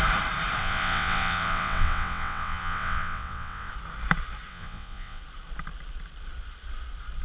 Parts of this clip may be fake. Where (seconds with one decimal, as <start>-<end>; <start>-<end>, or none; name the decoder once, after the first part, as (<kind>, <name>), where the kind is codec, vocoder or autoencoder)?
0.6-3.7 (vocoder, WaveNeXt); 4.5-5.2